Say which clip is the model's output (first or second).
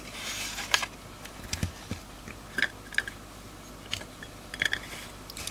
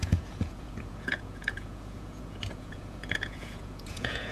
second